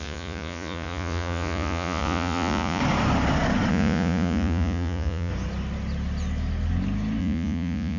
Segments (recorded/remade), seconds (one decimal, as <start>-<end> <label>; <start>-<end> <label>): 0.0-2.8 remade; 2.8-3.7 recorded; 3.7-5.3 remade; 5.3-7.2 recorded; 7.2-8.0 remade